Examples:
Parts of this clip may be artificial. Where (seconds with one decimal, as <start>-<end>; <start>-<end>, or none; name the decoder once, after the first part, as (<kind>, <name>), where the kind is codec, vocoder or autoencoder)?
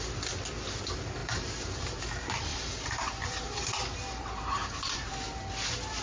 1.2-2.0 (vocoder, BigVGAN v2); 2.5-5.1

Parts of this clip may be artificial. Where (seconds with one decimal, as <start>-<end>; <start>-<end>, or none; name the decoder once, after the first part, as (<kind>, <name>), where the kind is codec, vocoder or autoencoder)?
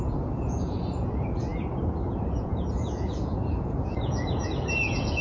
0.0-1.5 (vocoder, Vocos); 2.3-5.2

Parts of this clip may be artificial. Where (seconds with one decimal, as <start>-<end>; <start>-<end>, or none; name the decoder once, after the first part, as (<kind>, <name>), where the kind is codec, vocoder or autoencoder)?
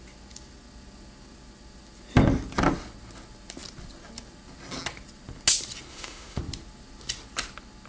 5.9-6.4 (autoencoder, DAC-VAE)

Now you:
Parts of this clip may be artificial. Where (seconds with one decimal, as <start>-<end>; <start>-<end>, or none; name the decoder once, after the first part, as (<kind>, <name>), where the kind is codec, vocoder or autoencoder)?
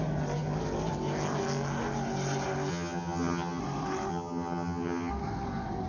2.7-3.6 (vocoder, HiFi-GAN); 4.1-5.1